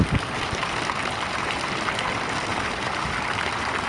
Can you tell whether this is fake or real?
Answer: real